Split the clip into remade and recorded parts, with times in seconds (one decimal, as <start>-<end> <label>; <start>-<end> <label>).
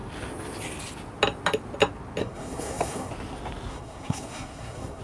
0.0-2.2 recorded; 2.2-3.1 remade; 3.1-3.7 recorded; 3.7-5.0 remade